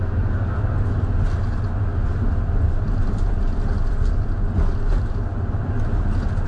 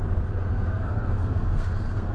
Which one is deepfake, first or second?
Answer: second